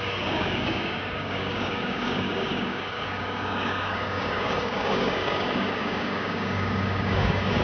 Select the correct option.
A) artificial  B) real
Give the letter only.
A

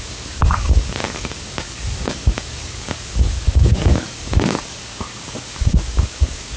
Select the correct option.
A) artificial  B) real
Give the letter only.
A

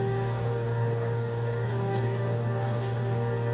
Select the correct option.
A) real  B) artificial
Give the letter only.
B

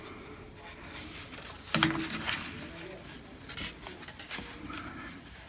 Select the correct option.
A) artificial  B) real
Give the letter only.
B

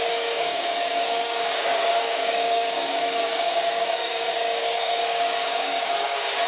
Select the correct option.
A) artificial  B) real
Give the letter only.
A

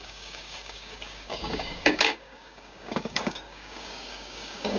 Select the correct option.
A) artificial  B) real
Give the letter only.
A